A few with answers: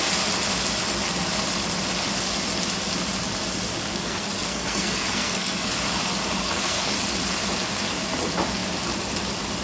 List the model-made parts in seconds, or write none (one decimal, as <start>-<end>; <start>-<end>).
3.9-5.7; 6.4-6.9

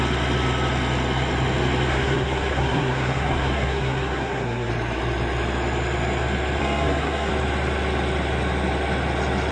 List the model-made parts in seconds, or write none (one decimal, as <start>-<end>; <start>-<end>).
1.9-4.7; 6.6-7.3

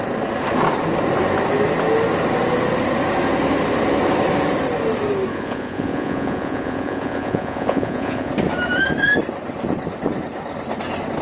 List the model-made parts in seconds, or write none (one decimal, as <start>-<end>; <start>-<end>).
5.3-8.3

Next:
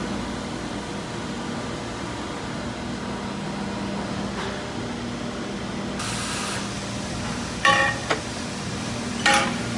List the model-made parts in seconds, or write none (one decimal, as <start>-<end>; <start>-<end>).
none